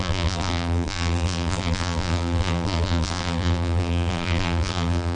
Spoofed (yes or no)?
yes